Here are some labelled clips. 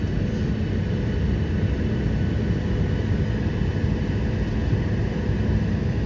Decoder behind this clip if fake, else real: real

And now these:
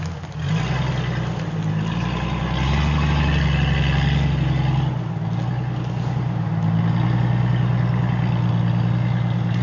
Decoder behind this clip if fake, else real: real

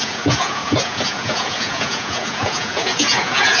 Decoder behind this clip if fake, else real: fake, vocoder, Vocos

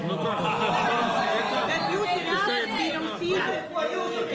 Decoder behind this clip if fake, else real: real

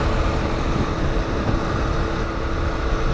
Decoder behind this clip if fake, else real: real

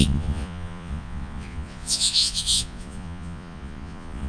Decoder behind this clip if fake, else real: fake, vocoder, Vocos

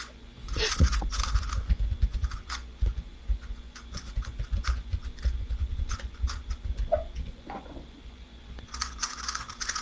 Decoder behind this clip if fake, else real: fake, vocoder, Vocos